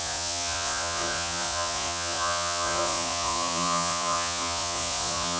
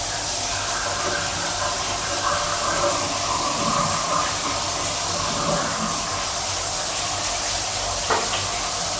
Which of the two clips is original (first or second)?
second